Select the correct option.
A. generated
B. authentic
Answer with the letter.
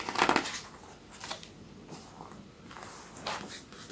B